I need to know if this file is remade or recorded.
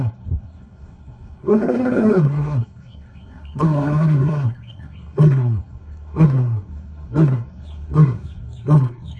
remade